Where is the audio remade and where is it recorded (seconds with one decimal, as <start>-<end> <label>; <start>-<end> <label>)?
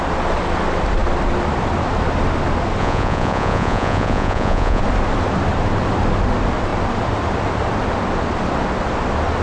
0.0-2.8 recorded; 2.8-4.8 remade; 4.8-9.4 recorded